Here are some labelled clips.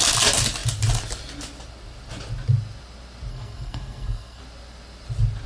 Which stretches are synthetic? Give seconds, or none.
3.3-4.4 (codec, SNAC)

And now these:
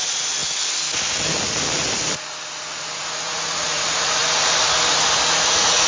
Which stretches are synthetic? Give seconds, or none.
0.0-0.4 (vocoder, Vocos); 3.2-4.2; 5.3-5.9

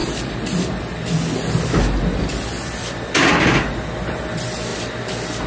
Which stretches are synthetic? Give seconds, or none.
none

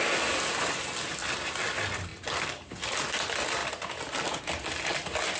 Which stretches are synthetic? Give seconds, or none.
none

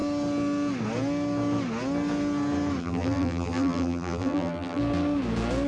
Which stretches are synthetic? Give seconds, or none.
2.8-4.8 (vocoder, BigVGAN v2)

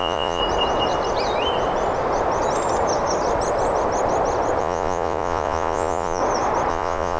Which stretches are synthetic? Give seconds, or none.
0.0-0.4 (vocoder, Vocos); 4.6-6.2; 6.7-7.2

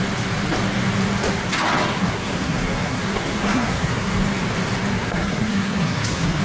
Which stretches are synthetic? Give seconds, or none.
1.9-4.2 (codec, SNAC); 4.9-6.4

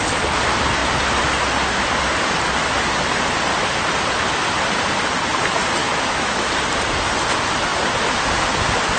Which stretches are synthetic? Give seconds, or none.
5.8-6.5 (autoencoder, DAC-VAE)